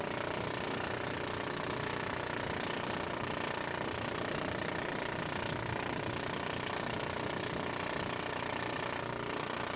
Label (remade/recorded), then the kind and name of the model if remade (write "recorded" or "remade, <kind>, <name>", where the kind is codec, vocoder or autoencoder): recorded